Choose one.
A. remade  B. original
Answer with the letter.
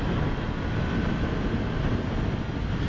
B